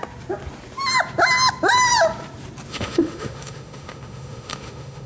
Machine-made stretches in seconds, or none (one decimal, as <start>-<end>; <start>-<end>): 2.7-5.1